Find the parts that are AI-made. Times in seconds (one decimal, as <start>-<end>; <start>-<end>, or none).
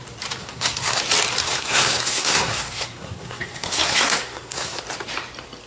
0.4-1.0; 1.4-4.8